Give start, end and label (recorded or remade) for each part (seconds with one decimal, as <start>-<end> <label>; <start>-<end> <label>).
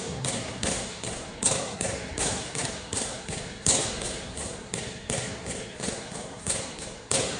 0.0-7.4 remade